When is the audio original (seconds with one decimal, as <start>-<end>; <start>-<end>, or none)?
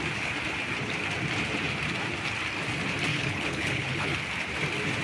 0.0-3.1; 4.2-5.0